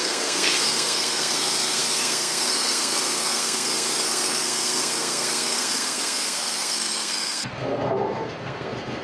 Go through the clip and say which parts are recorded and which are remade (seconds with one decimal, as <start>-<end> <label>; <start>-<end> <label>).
0.0-9.0 remade